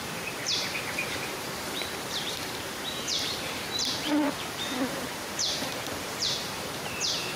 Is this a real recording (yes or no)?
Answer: no